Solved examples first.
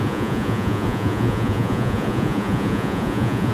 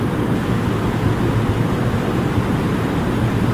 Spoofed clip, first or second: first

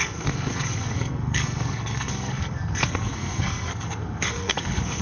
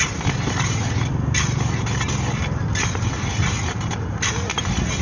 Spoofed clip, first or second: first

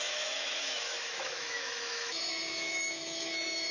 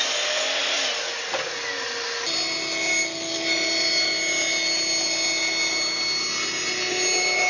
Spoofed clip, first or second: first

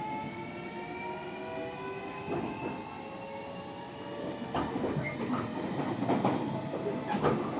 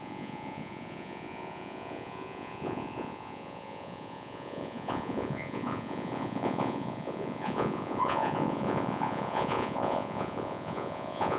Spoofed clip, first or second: second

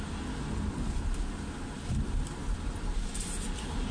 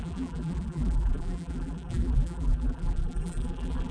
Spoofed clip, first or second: second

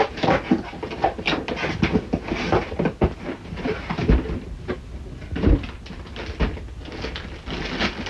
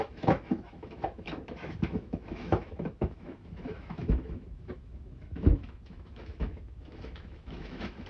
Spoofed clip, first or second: second